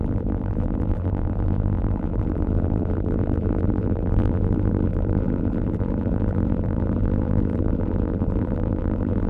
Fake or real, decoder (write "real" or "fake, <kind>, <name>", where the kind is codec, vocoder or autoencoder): fake, vocoder, BigVGAN v2